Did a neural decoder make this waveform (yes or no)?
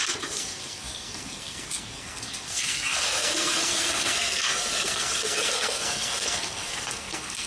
yes